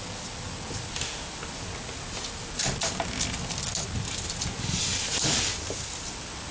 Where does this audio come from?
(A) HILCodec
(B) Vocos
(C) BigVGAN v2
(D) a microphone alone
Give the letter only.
D